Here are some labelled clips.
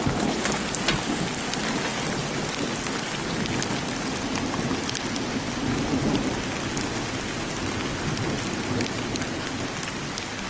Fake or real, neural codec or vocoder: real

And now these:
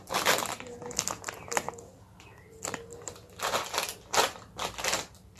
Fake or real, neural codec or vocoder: real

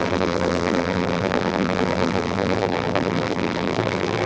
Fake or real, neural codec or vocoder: fake, vocoder, BigVGAN v2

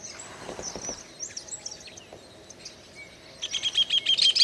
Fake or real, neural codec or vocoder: real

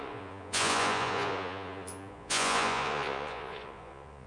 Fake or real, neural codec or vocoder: fake, vocoder, Vocos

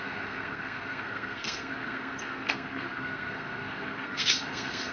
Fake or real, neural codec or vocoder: fake, codec, SNAC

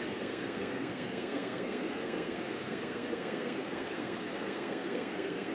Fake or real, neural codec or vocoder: fake, codec, SNAC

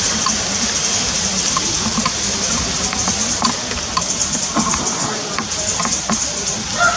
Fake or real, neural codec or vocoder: real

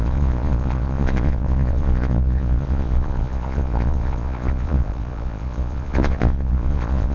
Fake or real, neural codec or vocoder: fake, vocoder, Vocos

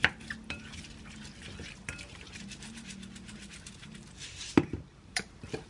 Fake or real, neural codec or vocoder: fake, vocoder, BigVGAN v2